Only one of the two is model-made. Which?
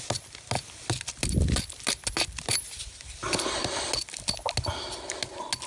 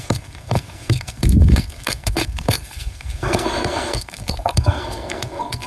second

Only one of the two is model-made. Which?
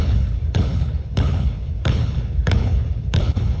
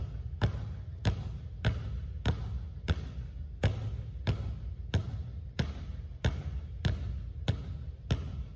first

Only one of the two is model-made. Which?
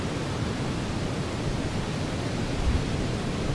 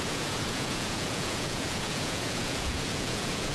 second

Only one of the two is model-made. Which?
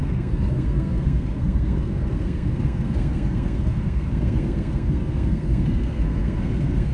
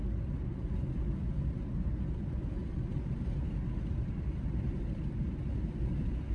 first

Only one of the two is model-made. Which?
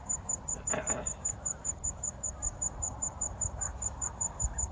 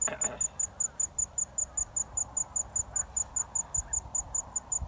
first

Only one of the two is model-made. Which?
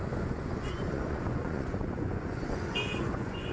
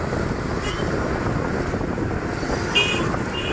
first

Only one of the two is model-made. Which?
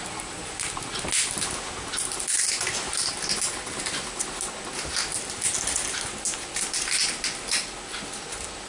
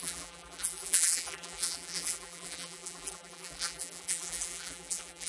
second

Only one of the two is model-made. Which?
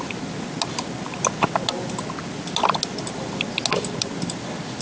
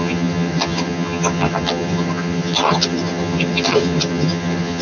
second